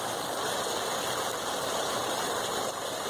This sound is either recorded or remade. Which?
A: recorded